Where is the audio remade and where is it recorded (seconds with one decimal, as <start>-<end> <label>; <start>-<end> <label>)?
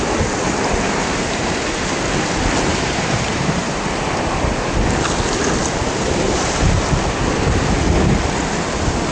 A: 0.0-1.0 recorded; 1.0-1.6 remade; 1.6-2.7 recorded; 2.7-3.8 remade; 3.8-9.1 recorded